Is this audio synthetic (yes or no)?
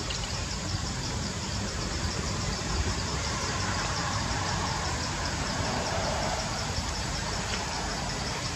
yes